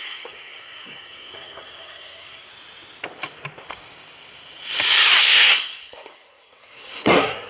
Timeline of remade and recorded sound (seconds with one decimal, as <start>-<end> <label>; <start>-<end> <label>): 0.0-2.5 remade; 2.5-5.2 recorded; 5.2-7.5 remade